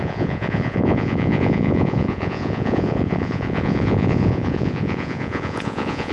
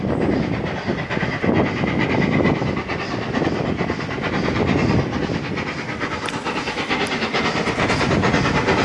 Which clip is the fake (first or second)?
first